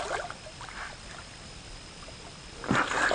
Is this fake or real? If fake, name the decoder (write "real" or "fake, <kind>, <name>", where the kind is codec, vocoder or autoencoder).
real